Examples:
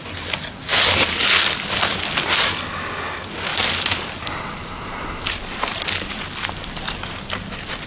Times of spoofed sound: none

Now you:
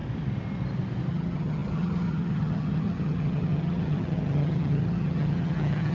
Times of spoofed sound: 1.1-5.9 (vocoder, HiFi-GAN)

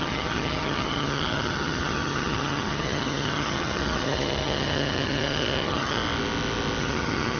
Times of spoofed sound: 0.0-6.0 (vocoder, HiFi-GAN); 6.8-7.4

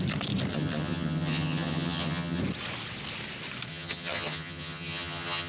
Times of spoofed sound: 0.5-2.4 (vocoder, HiFi-GAN); 3.7-5.5

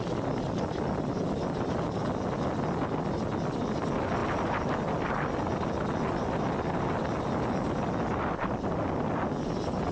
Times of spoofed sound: none